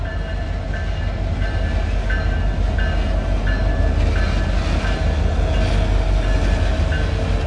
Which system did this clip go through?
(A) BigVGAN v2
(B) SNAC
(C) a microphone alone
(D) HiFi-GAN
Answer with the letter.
C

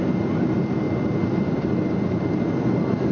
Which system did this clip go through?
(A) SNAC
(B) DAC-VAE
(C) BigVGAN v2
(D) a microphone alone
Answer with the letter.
D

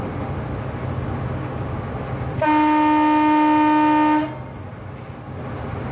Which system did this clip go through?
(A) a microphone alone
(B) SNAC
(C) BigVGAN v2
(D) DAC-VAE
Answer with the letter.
A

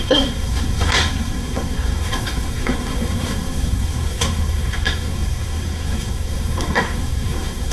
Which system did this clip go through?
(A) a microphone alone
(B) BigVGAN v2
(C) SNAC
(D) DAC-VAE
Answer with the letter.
C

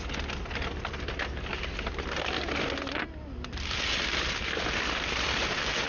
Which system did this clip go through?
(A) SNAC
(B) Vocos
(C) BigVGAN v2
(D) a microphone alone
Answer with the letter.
D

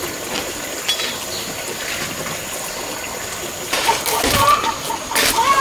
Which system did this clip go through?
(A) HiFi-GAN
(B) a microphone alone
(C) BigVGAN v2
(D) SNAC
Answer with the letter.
B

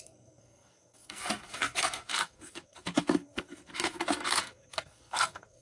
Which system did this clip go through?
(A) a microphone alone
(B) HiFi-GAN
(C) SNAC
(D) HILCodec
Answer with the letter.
C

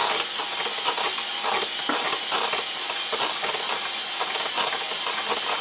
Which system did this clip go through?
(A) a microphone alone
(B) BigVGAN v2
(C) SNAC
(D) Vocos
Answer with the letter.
A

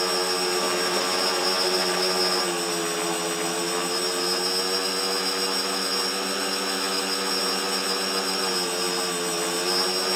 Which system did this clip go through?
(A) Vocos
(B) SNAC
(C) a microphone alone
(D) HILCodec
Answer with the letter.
C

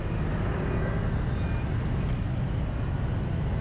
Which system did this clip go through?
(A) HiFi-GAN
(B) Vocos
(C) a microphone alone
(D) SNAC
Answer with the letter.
C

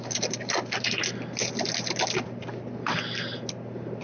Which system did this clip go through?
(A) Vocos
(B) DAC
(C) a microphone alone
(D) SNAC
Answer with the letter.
C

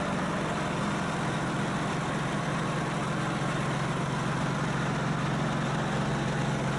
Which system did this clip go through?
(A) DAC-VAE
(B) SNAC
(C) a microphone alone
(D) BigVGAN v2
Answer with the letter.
C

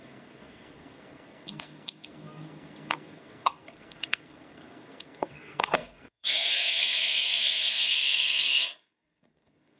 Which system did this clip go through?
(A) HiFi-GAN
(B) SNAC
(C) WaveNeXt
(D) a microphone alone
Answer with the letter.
B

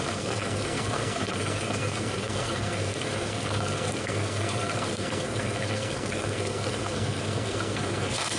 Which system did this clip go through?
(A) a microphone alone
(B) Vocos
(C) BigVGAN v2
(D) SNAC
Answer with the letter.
D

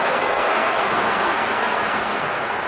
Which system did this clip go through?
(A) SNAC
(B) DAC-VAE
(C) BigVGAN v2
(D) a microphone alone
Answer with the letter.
A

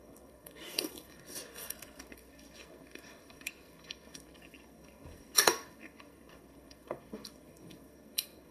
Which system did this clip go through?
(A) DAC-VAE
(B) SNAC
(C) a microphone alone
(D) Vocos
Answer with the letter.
B